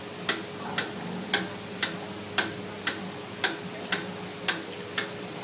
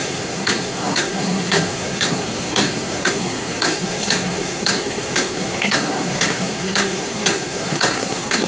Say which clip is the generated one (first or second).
second